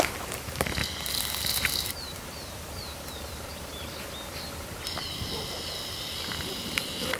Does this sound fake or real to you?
fake